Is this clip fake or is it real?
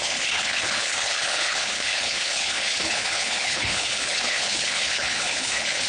fake